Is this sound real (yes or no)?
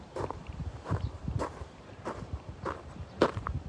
no